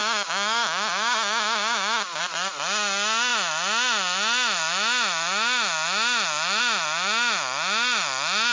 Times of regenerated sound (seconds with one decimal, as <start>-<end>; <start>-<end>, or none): 0.0-2.2